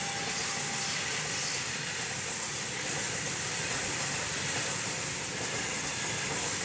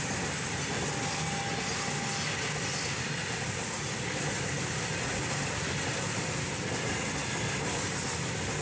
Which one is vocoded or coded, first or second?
first